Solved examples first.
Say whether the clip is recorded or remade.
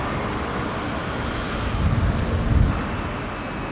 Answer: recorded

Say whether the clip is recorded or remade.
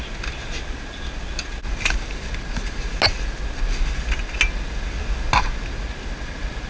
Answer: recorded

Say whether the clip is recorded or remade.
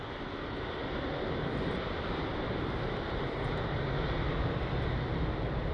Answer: recorded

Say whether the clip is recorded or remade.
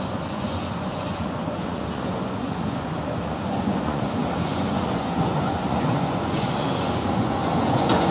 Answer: remade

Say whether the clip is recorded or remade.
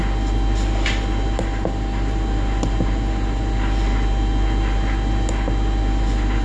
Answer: recorded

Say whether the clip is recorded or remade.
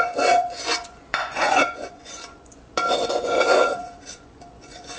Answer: remade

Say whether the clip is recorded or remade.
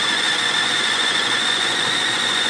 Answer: remade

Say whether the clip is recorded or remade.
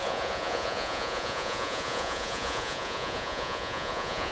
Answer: remade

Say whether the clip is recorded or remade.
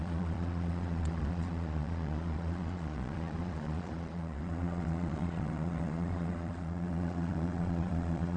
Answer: remade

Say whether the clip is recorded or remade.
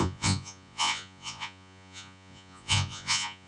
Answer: remade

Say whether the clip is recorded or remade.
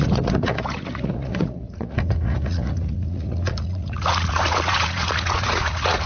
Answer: remade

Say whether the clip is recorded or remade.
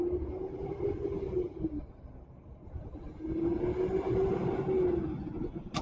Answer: recorded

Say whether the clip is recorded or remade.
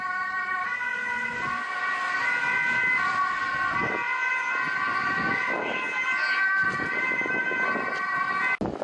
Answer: recorded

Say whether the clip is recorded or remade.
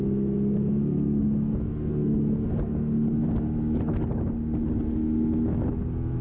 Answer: recorded